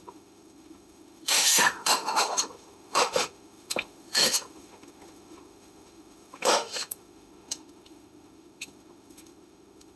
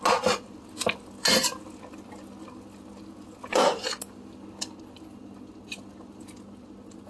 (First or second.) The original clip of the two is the second